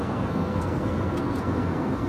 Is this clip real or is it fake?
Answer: fake